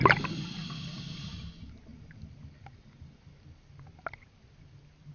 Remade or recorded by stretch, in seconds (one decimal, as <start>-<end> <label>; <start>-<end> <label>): 0.0-5.1 recorded